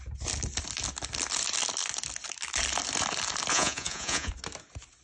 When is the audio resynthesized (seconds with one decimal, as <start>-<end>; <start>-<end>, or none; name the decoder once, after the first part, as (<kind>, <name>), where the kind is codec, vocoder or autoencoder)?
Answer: 3.5-4.3 (vocoder, Vocos)